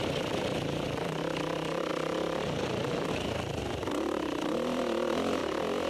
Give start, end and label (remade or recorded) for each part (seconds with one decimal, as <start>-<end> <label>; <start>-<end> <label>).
0.0-1.9 remade; 1.9-3.1 recorded; 3.1-5.4 remade; 5.4-5.9 recorded